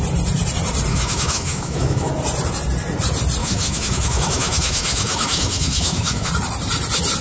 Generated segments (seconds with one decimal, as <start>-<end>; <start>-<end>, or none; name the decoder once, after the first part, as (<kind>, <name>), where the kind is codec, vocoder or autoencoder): 0.9-2.1 (autoencoder, DAC-VAE); 3.4-6.3